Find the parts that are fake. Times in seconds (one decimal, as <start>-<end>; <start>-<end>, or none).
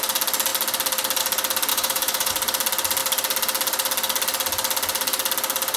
1.7-2.3